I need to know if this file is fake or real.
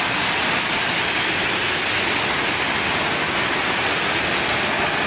real